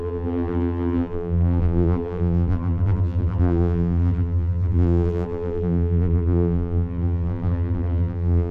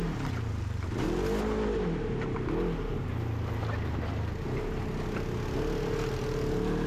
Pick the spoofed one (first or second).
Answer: first